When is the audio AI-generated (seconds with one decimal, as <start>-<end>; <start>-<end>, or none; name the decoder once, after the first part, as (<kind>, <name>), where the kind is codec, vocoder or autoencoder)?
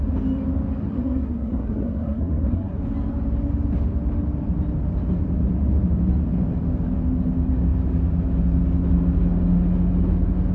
0.8-2.8 (codec, SNAC)